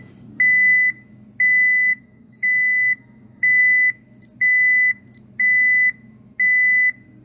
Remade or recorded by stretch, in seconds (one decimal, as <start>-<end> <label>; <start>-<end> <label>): 0.0-1.9 recorded; 1.9-3.6 remade; 3.6-7.2 recorded